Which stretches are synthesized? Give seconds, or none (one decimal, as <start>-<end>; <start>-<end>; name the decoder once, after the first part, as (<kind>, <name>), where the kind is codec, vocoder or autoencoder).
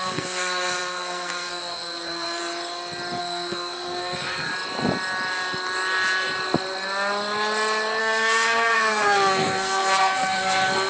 0.0-2.4 (codec, SNAC); 3.2-4.5; 8.0-10.9